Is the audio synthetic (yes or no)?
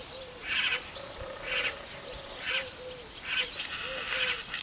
yes